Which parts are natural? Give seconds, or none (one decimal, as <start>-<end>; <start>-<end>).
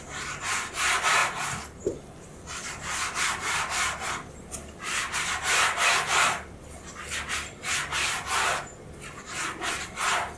0.0-10.4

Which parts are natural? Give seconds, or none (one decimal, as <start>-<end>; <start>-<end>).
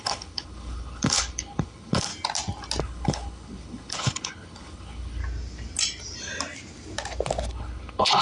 2.1-2.8; 5.2-7.5